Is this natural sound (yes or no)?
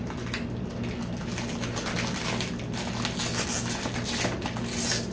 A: yes